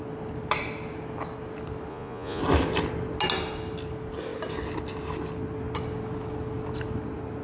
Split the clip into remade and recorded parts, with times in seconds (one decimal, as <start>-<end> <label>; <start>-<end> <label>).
0.0-1.9 recorded; 1.9-2.4 remade; 2.4-7.4 recorded